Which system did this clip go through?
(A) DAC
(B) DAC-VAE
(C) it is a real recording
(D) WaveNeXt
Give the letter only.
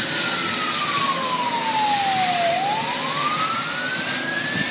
C